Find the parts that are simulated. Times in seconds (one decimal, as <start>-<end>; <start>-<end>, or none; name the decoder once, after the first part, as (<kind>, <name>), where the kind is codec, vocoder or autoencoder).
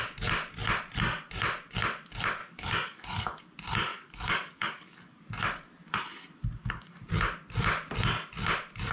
2.4-3.4 (codec, DAC); 3.9-5.2; 6.6-7.1